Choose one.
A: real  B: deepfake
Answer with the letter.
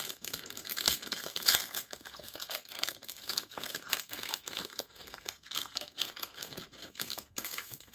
B